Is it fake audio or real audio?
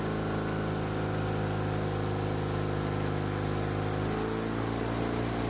real